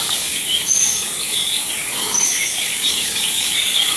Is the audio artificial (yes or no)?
yes